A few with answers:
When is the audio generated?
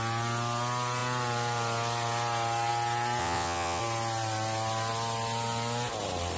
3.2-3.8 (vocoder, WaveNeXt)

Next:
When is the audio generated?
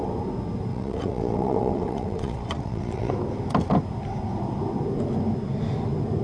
0.7-3.1 (vocoder, WaveNeXt)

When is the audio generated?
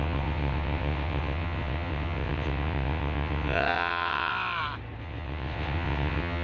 0.0-4.3 (vocoder, WaveNeXt); 5.0-6.4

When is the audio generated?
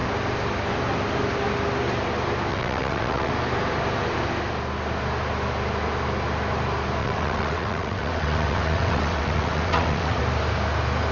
2.5-3.3 (vocoder, WaveNeXt); 7.0-10.2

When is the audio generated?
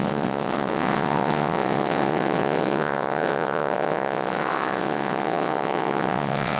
0.0-6.6 (vocoder, WaveNeXt)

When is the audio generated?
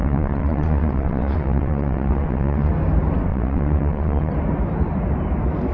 0.0-2.7 (vocoder, WaveNeXt); 3.3-4.3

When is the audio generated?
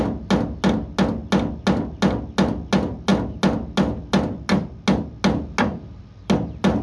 none